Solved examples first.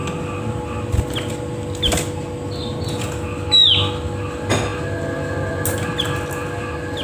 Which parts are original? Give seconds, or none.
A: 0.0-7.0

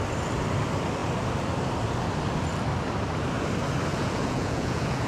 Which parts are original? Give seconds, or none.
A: 0.0-3.9

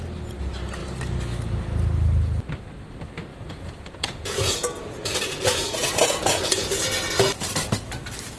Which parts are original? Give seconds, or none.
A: 0.0-3.3; 6.7-8.4

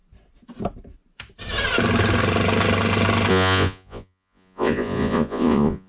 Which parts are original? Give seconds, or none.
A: 0.0-3.3

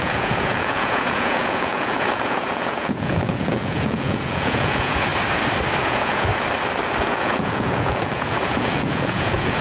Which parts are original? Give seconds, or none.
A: 5.1-5.8; 6.3-7.0

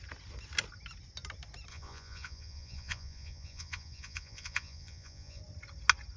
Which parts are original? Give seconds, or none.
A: 0.0-1.7; 5.4-6.2

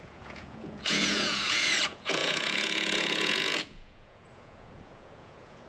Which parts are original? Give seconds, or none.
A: none

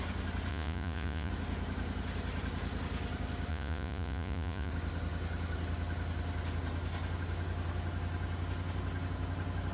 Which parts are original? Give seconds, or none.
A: 0.0-0.5; 1.3-3.5; 4.7-9.7